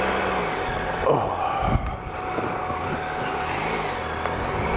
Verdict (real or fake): real